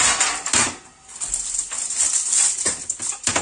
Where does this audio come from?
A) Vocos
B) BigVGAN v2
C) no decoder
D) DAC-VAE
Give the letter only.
C